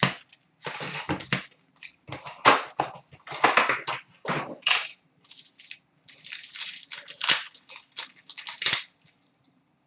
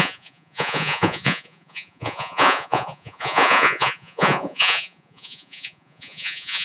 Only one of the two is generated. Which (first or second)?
second